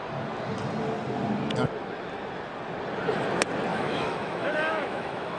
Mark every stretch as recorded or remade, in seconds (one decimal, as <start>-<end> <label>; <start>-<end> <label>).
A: 0.0-3.7 recorded; 3.7-5.4 remade